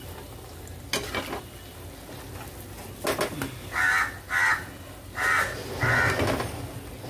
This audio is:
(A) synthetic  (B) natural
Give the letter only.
B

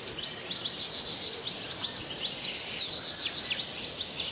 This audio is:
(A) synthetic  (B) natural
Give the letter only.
B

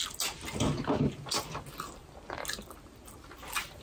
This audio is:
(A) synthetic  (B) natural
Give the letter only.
B